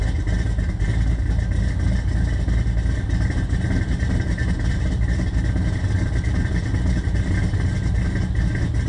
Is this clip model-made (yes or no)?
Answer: no